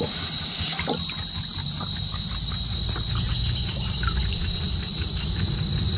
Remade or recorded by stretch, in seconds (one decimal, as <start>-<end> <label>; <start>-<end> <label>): 0.0-6.0 recorded